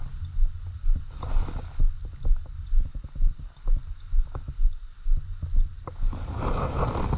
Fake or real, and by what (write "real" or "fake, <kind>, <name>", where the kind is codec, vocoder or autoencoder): real